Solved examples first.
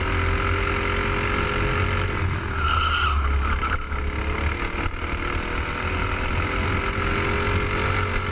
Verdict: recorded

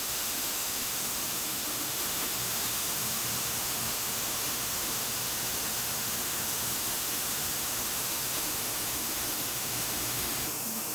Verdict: remade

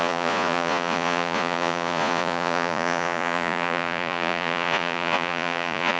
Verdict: remade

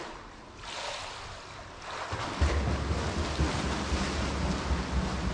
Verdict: recorded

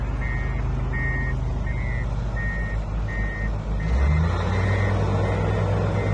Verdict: recorded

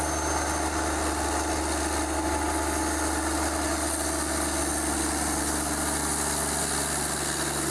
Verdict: recorded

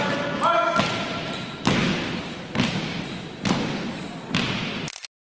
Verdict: recorded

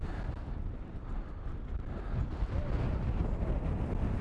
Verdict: recorded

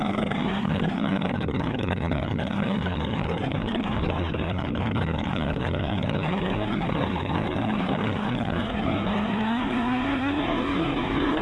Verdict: remade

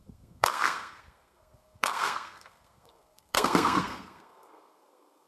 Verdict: remade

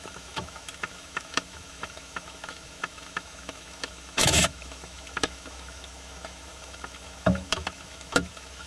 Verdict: remade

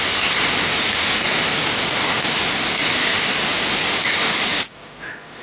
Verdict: recorded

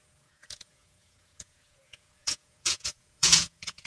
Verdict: remade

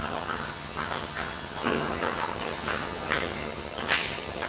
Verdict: remade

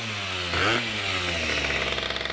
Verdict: recorded